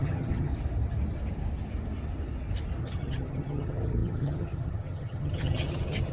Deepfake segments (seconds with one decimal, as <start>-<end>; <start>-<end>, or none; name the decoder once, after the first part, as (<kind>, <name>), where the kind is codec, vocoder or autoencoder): 0.0-0.5 (vocoder, HiFi-GAN); 2.8-6.1